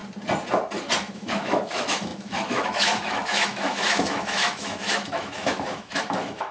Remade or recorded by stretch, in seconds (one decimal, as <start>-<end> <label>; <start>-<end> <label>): 0.0-1.0 recorded; 1.0-6.5 remade